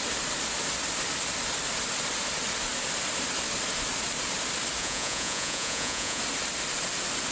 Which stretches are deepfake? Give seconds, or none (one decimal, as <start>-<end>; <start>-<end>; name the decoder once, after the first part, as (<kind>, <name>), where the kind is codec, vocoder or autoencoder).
4.8-6.2 (vocoder, Vocos)